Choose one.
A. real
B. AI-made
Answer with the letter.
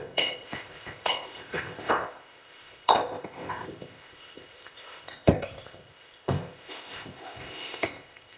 B